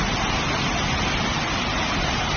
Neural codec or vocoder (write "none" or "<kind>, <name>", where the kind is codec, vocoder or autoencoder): none